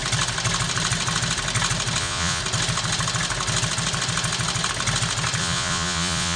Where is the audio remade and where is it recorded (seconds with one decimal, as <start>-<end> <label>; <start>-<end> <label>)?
0.0-2.0 recorded; 2.0-2.4 remade; 2.4-5.4 recorded; 5.4-6.4 remade

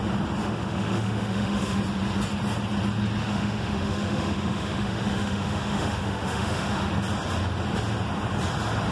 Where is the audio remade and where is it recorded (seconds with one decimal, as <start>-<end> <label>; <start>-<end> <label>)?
0.0-0.4 recorded; 0.4-1.8 remade; 1.8-3.2 recorded; 3.2-6.9 remade; 6.9-8.9 recorded

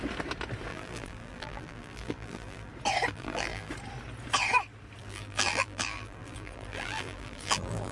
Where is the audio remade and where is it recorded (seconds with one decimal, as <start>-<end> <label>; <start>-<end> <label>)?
0.0-0.7 recorded; 0.7-2.7 remade; 2.7-3.1 recorded; 3.1-3.7 remade; 3.7-5.0 recorded; 5.0-7.9 remade

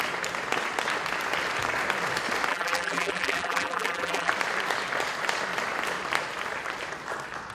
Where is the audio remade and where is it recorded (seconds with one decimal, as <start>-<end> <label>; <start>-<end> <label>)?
0.0-2.5 recorded; 2.5-4.3 remade; 4.3-7.5 recorded